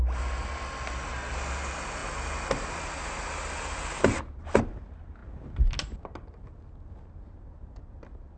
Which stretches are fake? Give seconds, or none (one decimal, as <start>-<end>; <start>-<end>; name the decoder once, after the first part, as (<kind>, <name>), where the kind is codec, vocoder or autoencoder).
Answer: none